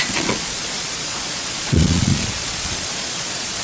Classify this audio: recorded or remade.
remade